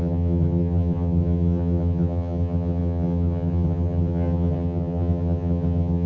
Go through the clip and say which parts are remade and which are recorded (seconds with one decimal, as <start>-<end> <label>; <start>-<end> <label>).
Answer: 0.0-6.1 remade